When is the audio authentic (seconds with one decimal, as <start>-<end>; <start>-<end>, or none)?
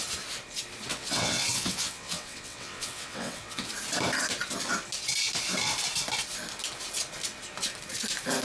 0.0-0.9; 3.7-8.4